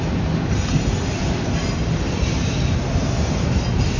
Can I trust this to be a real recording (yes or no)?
yes